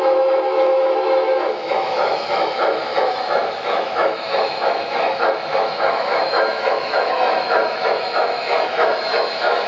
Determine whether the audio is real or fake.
fake